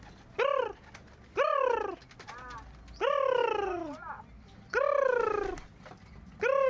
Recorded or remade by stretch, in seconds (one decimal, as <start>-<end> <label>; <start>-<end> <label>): 0.0-6.7 recorded